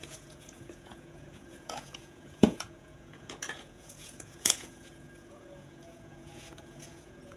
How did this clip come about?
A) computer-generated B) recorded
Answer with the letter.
A